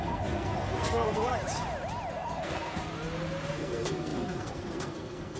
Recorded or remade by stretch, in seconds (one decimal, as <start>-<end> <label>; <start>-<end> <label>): 0.0-1.3 remade; 1.3-2.1 recorded; 2.1-2.8 remade; 2.8-3.5 recorded; 3.5-5.4 remade